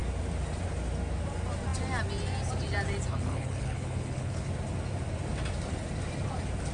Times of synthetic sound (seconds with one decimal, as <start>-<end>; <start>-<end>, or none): 3.1-4.5